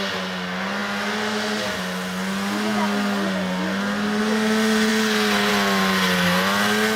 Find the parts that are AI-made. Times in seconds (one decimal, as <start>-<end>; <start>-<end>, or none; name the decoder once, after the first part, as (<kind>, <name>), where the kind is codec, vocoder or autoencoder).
none